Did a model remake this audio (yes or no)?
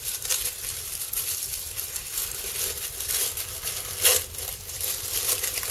yes